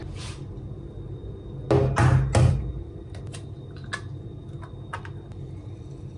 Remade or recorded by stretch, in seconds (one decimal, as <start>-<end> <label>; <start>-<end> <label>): 0.0-6.2 recorded